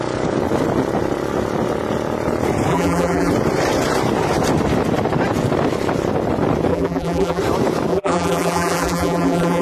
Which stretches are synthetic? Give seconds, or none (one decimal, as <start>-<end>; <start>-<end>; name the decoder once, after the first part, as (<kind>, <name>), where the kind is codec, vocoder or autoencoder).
2.7-3.3 (vocoder, BigVGAN v2); 6.7-7.4; 7.9-9.6